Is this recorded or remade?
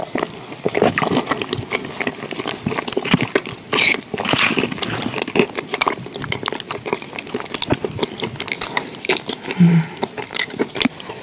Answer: recorded